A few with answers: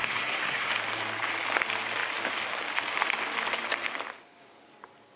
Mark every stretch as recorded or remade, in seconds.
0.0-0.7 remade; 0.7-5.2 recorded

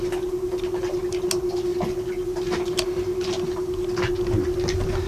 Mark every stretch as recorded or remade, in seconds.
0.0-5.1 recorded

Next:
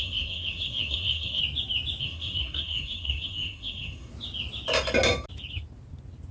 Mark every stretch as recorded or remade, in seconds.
0.0-1.4 remade; 1.4-2.0 recorded; 2.0-4.1 remade; 4.1-6.3 recorded

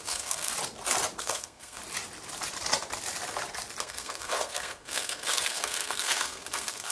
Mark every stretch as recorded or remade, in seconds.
0.0-0.5 remade; 0.5-1.2 recorded; 1.2-1.8 remade; 1.8-3.8 recorded; 3.8-6.9 remade